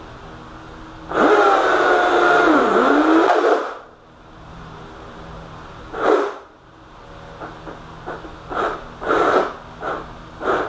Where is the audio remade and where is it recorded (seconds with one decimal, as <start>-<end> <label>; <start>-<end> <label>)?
0.0-1.7 recorded; 1.7-7.0 remade; 7.0-10.7 recorded